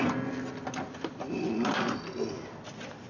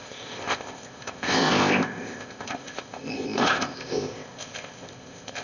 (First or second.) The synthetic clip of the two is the second